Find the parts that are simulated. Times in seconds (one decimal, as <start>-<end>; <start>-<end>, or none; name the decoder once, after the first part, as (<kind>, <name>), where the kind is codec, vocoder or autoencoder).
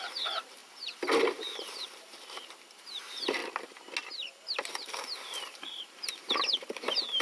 0.0-3.4 (vocoder, BigVGAN v2); 4.7-7.2